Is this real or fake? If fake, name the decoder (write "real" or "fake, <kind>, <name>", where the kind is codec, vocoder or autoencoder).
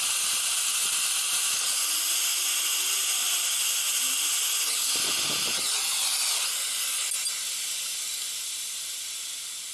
real